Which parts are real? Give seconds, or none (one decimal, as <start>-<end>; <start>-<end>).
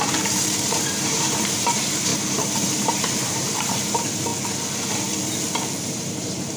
4.3-5.9